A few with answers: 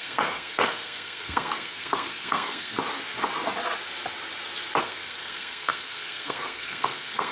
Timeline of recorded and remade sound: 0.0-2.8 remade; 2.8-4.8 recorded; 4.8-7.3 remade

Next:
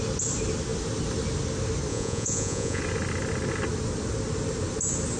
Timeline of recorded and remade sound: 0.0-1.9 recorded; 1.9-2.8 remade; 2.8-5.2 recorded

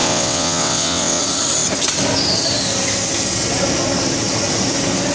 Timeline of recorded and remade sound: 0.0-1.2 remade; 1.2-5.1 recorded

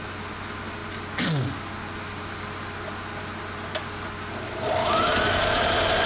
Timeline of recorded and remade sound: 0.0-4.8 recorded; 4.8-5.5 remade; 5.5-6.1 recorded

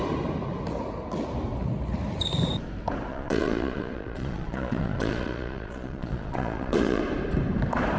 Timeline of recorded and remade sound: 0.0-3.1 recorded; 3.1-7.0 remade; 7.0-8.0 recorded

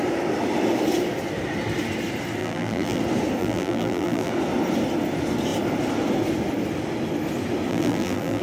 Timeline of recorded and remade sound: 0.0-2.4 recorded; 2.4-3.0 remade; 3.0-3.4 recorded; 3.4-4.3 remade; 4.3-7.7 recorded; 7.7-8.4 remade

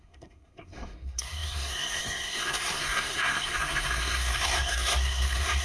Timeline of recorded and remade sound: 0.0-5.6 remade